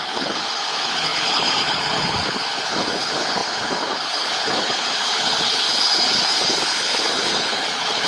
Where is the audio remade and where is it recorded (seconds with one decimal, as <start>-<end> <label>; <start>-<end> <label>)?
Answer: 0.0-8.1 remade